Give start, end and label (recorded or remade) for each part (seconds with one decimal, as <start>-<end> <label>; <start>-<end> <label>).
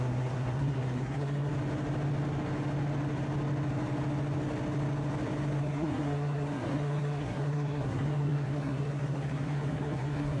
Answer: 0.0-1.5 remade; 1.5-5.6 recorded; 5.6-10.4 remade